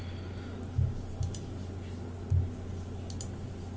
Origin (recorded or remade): recorded